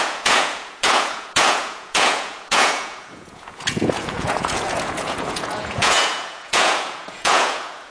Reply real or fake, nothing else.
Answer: fake